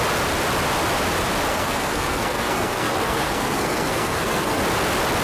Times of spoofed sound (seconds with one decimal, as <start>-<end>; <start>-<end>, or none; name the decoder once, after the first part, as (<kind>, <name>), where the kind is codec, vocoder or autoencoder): 1.5-4.6 (codec, SNAC)